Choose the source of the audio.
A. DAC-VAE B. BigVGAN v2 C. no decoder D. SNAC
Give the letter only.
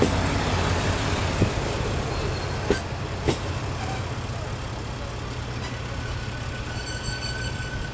C